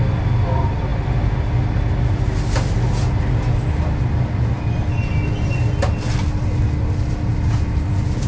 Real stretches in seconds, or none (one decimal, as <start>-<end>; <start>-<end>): 0.0-7.3; 7.9-8.3